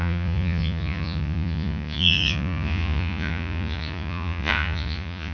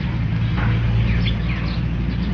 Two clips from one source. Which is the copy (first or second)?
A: first